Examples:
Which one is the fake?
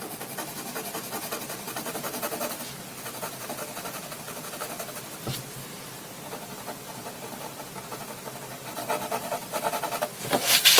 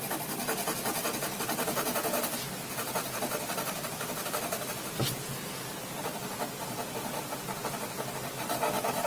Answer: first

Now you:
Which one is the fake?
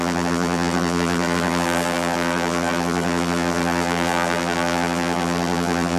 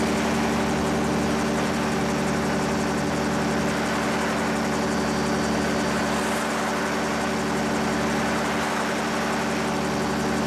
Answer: first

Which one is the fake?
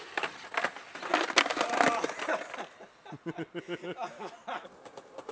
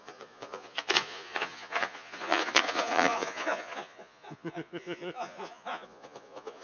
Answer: second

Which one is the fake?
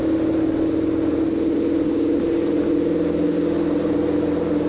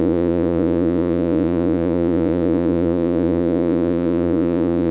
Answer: second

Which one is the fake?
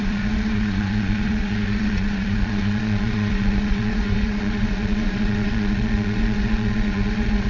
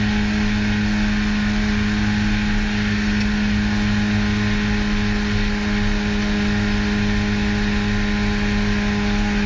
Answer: first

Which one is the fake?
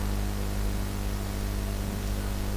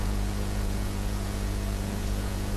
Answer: second